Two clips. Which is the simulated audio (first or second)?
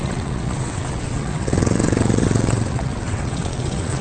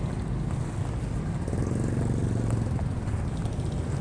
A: first